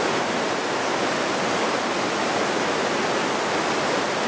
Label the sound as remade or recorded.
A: recorded